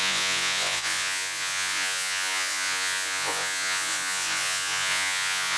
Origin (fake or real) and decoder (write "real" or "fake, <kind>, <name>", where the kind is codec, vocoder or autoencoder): fake, vocoder, Vocos